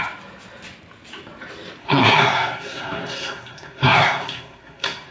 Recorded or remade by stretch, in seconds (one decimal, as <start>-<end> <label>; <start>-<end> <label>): 0.0-1.8 recorded; 1.8-5.1 remade